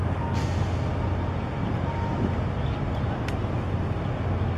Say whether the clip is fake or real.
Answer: real